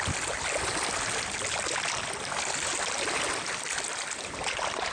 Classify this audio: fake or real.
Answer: real